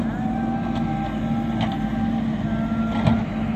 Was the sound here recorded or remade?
recorded